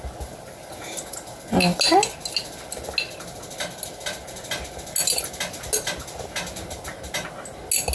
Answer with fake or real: real